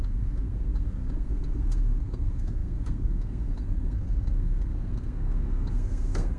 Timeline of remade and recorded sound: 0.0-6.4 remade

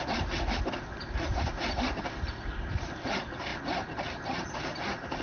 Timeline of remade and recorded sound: 0.0-5.2 recorded

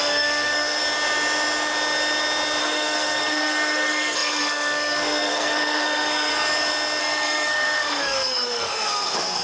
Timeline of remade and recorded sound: 0.0-0.8 remade; 0.8-2.6 recorded; 2.6-6.3 remade; 6.3-7.0 recorded; 7.0-9.4 remade

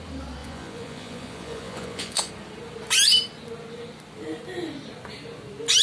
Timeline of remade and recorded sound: 0.0-0.4 recorded; 0.4-2.3 remade; 2.3-5.8 recorded

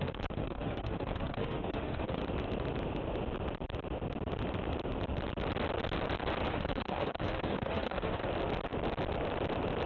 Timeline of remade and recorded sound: 0.0-2.2 remade; 2.2-6.5 recorded; 6.5-8.2 remade; 8.2-9.9 recorded

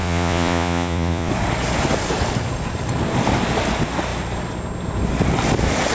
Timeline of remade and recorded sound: 0.0-1.3 remade; 1.3-5.9 recorded

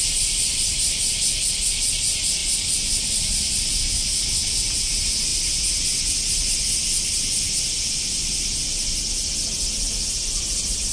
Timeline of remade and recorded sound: 0.0-2.4 recorded; 2.4-3.6 remade; 3.6-5.3 recorded; 5.3-8.9 remade; 8.9-10.9 recorded

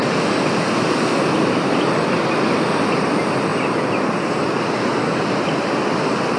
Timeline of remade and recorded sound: 0.0-6.4 recorded